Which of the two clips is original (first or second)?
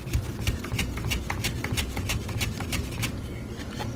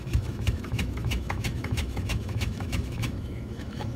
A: first